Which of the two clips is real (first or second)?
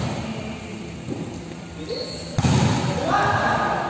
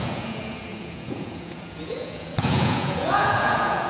first